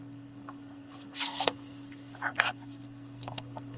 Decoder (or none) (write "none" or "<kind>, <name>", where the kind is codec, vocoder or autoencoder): codec, SNAC